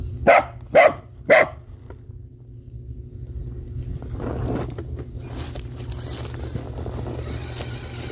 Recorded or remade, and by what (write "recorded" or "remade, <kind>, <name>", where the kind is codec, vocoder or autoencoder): recorded